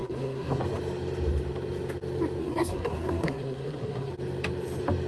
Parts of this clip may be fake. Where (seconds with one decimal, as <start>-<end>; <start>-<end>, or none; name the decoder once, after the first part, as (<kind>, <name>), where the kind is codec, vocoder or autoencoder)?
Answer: 0.0-0.6 (codec, SNAC); 2.4-4.1